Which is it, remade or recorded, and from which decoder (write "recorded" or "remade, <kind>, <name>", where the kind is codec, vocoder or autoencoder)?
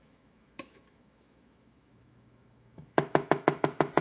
remade, autoencoder, DAC-VAE